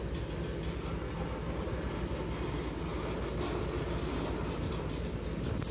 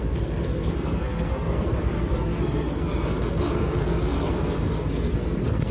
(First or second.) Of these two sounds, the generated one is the second